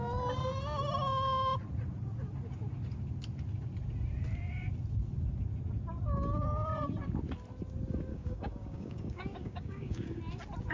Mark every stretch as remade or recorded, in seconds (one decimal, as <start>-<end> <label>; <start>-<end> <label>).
0.0-8.1 recorded; 8.1-10.2 remade; 10.2-10.7 recorded